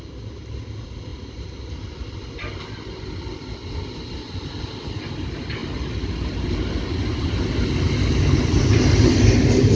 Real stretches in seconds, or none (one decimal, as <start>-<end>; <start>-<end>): 0.0-9.8